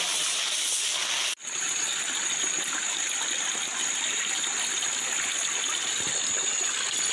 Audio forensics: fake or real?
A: real